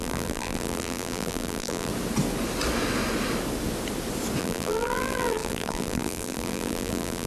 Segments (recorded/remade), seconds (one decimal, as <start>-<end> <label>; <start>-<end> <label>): 0.0-1.9 remade; 1.9-4.4 recorded; 4.4-7.3 remade